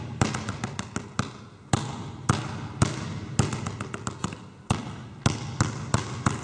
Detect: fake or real real